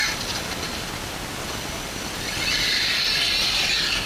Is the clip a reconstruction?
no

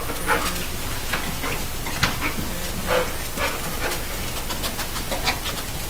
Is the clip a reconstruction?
no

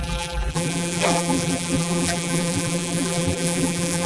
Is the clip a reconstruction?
yes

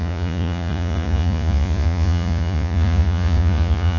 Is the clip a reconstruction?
yes